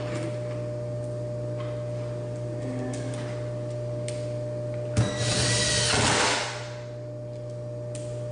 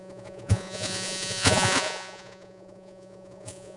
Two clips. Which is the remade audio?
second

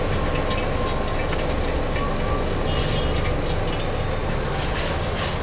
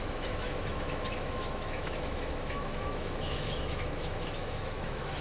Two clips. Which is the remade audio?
second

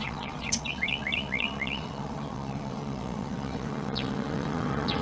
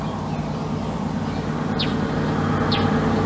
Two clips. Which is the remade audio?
first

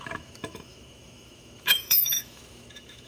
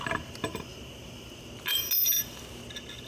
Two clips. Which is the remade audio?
first